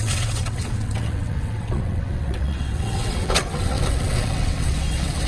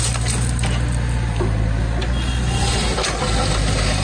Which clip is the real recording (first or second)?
second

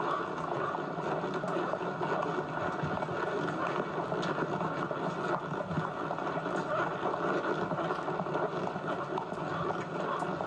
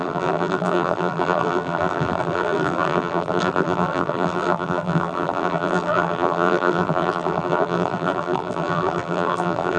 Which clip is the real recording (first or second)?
first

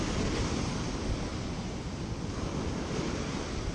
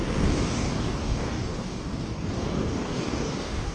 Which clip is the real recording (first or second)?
first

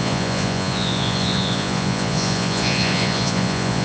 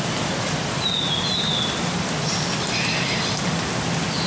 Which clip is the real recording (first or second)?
second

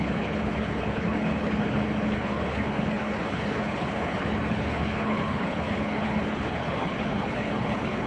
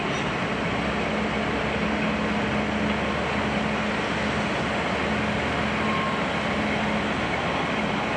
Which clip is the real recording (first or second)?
second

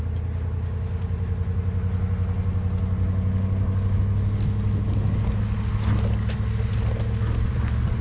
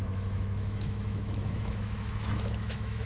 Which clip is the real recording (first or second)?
first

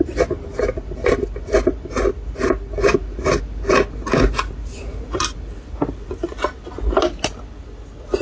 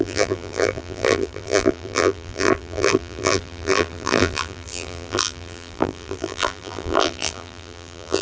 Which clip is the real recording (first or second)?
first